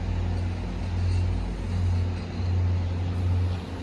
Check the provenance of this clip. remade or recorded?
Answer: recorded